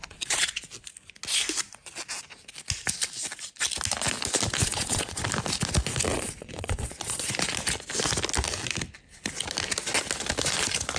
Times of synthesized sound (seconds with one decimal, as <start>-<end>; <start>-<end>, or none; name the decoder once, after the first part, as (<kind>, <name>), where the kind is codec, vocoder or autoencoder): 0.0-0.7 (vocoder, Vocos); 4.6-5.2; 6.1-7.3